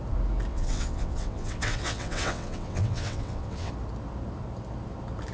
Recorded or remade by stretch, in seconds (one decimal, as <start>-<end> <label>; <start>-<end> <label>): 0.0-0.5 recorded; 0.5-3.7 remade; 3.7-5.3 recorded